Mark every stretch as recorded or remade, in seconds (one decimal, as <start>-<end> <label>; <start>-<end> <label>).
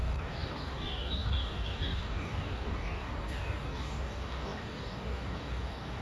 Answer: 0.0-6.0 remade